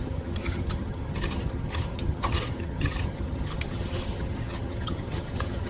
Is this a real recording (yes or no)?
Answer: no